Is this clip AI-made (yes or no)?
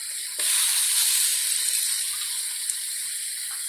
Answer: no